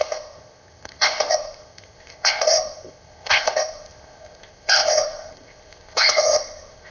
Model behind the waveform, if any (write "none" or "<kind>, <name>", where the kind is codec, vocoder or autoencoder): codec, ZipCodec